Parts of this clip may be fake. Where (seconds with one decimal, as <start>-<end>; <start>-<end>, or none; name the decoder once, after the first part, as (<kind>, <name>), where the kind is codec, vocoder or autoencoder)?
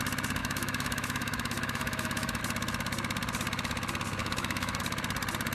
0.4-2.4 (autoencoder, DAC-VAE); 4.2-4.8